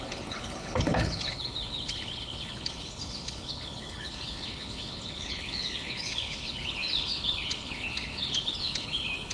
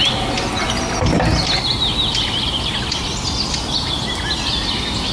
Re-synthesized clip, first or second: first